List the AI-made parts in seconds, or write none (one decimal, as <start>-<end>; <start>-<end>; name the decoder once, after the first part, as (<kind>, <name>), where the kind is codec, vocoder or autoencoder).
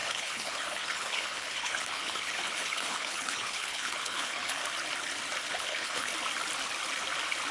0.0-4.6 (codec, HILCodec); 5.5-6.1